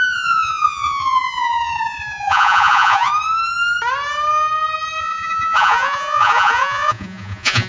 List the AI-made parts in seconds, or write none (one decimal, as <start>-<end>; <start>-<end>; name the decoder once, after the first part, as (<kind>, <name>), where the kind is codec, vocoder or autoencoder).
0.0-3.1 (vocoder, Vocos); 5.0-7.7